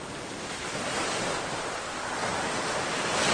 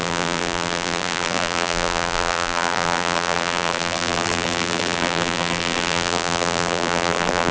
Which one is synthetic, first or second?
second